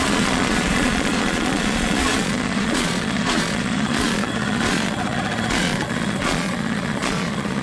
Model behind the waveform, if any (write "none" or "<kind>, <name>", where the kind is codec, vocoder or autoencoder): vocoder, Vocos